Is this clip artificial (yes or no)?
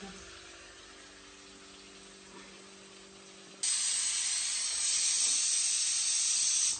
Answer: no